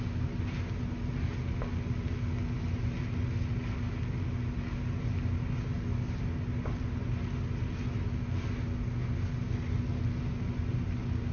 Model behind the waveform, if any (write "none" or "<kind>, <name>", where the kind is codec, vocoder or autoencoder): none